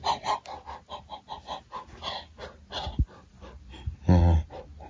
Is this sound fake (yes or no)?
no